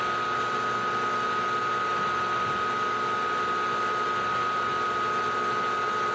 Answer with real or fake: real